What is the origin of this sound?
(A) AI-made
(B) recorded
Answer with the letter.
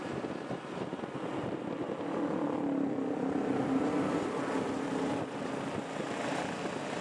B